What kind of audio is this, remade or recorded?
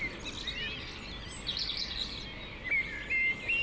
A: recorded